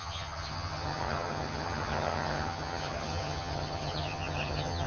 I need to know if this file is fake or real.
fake